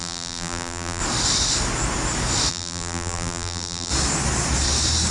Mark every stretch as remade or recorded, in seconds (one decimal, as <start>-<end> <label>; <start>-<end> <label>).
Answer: 0.0-1.0 remade; 1.0-2.5 recorded; 2.5-3.9 remade; 3.9-5.1 recorded